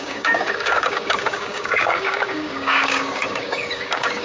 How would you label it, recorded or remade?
remade